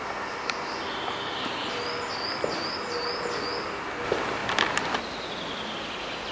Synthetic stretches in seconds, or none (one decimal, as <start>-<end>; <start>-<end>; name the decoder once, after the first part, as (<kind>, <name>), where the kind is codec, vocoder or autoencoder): none